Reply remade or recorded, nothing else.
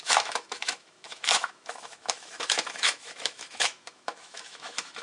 remade